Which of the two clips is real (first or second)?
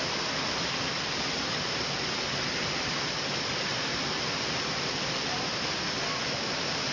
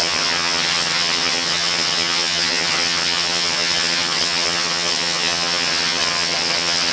first